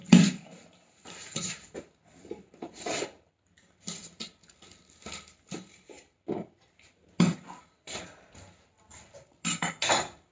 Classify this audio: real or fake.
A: real